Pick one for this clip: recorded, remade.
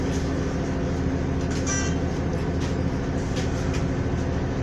recorded